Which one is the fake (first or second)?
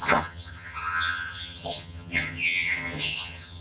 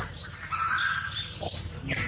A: first